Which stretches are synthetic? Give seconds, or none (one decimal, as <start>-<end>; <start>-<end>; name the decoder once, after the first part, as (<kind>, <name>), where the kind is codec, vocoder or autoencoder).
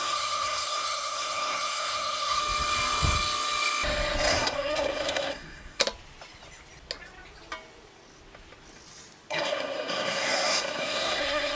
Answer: 0.0-2.4 (codec, SNAC); 4.3-5.8; 9.3-11.6